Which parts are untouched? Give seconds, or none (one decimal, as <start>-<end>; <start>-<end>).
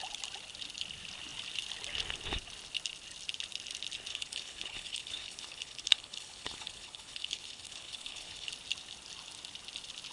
0.0-4.1; 8.5-10.1